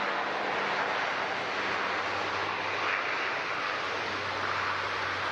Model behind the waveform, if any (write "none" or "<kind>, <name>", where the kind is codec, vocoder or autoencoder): none